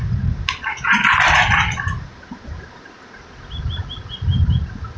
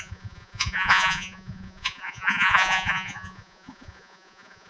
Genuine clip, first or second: first